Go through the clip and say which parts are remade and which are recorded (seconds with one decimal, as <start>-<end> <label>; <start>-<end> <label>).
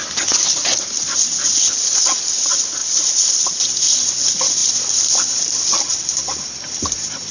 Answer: 0.0-2.8 recorded; 2.8-3.3 remade; 3.3-4.6 recorded; 4.6-5.4 remade; 5.4-7.3 recorded